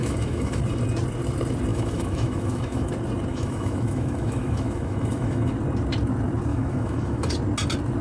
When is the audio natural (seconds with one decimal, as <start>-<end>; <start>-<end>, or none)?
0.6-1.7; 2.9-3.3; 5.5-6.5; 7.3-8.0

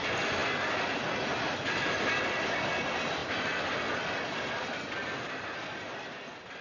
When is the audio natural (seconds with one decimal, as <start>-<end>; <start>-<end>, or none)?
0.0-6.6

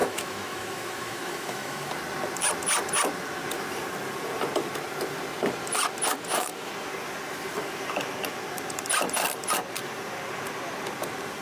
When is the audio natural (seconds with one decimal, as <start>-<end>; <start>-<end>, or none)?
1.9-6.1; 6.7-11.4